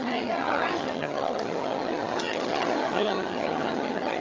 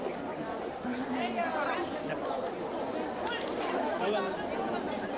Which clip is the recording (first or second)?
second